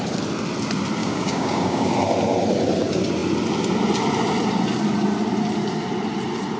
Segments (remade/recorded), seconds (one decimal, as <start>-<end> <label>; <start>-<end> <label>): 0.0-1.0 recorded; 1.0-1.9 remade; 1.9-6.6 recorded